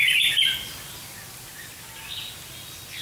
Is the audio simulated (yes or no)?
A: no